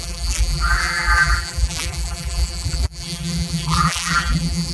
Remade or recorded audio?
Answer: remade